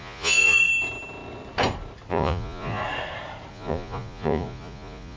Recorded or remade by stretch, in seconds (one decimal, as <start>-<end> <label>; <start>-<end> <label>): 0.0-0.7 remade; 0.7-2.1 recorded; 2.1-2.8 remade; 2.8-3.5 recorded; 3.5-5.2 remade